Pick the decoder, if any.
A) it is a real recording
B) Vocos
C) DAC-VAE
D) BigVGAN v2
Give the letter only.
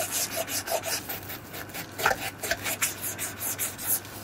A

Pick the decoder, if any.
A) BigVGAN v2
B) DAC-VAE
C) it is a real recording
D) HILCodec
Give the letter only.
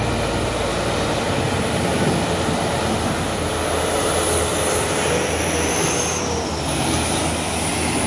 C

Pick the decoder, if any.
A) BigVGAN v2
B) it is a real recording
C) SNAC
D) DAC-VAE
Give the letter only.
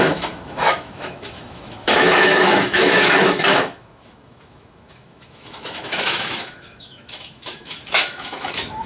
D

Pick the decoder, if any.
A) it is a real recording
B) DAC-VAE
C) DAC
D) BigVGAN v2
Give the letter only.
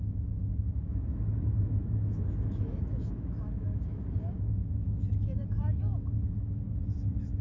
B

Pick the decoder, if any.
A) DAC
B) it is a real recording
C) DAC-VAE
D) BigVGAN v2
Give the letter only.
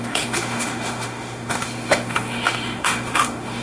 C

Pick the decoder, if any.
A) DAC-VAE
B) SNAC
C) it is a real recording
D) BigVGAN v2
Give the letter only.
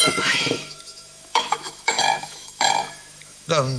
A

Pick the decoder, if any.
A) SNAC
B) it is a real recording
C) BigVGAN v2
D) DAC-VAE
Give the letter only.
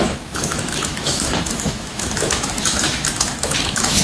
D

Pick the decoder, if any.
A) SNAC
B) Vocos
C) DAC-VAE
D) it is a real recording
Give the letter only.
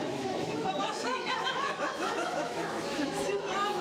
C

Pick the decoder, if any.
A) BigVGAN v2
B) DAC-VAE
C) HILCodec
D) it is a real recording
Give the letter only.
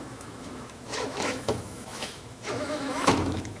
B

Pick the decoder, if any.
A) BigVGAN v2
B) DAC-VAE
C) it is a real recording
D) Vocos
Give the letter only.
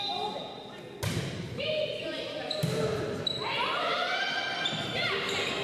C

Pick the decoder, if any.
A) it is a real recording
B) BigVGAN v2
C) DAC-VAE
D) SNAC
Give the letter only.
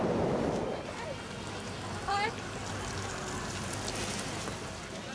A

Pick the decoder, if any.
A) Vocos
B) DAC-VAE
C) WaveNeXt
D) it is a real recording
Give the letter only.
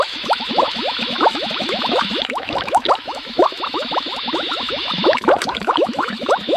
B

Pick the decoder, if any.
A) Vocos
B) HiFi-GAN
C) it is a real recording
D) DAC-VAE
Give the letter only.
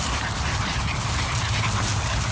C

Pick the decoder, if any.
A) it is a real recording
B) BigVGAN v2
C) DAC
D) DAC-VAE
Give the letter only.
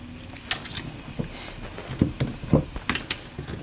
A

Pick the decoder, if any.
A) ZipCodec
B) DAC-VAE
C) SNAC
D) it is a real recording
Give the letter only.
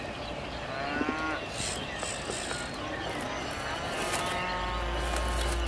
D